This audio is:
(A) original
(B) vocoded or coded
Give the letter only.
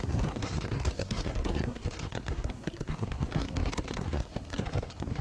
B